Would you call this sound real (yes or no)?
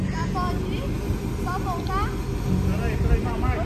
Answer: yes